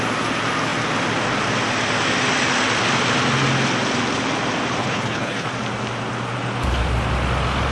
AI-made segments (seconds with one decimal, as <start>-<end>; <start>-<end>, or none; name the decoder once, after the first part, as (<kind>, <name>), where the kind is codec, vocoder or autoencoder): 4.8-5.5 (codec, HILCodec)